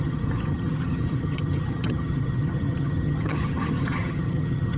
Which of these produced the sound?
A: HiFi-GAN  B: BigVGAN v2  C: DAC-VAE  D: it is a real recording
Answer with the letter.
A